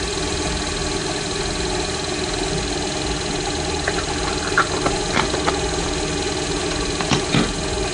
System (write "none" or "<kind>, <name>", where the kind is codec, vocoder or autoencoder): none